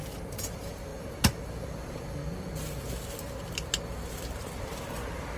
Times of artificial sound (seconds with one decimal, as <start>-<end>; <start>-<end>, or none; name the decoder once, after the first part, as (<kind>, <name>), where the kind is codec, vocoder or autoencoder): 0.0-2.2 (vocoder, BigVGAN v2)